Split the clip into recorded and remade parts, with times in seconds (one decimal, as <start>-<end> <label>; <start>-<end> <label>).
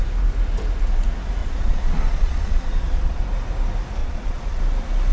0.0-1.4 recorded; 1.4-3.2 remade; 3.2-4.0 recorded; 4.0-4.6 remade; 4.6-5.1 recorded